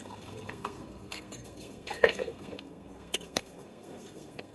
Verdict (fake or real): fake